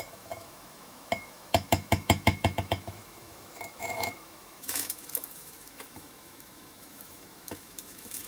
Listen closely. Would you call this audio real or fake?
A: fake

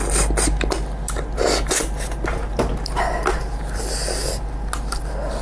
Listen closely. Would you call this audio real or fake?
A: real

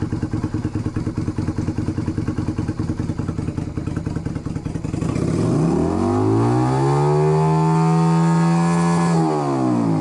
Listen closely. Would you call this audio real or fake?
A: real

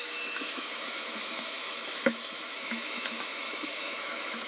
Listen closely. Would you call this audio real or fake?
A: fake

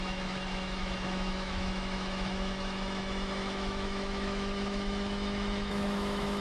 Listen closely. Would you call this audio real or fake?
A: fake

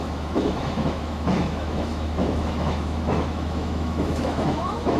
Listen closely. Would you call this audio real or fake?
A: fake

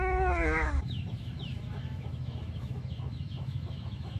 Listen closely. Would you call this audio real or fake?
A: fake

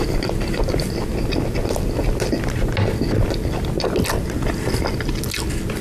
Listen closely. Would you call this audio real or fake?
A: real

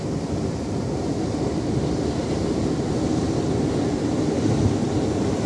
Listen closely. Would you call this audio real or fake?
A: real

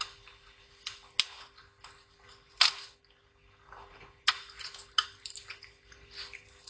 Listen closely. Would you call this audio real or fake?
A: real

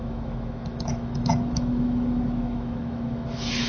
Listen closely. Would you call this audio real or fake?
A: fake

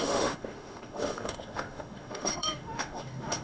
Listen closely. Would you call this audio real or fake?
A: fake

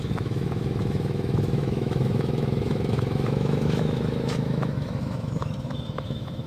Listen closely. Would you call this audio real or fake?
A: fake